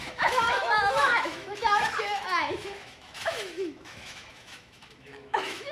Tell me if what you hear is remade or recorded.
remade